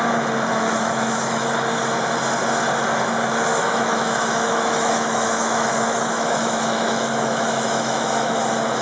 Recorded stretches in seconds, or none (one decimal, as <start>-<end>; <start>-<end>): 0.0-0.5; 1.4-3.5; 8.4-8.8